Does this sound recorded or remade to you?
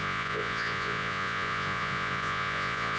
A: remade